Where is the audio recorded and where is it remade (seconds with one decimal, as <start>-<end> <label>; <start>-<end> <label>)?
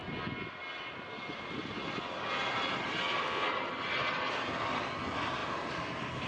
0.0-6.3 recorded